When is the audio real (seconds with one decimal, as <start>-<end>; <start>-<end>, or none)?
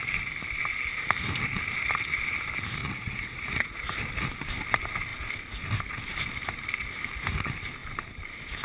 0.0-2.8; 3.8-8.6